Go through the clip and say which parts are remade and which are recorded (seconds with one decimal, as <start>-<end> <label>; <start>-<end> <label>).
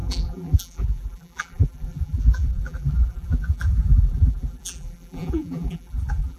0.0-6.4 remade